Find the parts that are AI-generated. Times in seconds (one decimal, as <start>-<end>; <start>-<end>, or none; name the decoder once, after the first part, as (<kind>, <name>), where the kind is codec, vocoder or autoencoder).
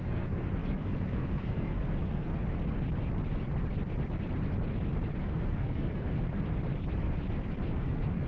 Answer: 0.0-2.3 (codec, SNAC); 5.2-6.1; 7.7-8.3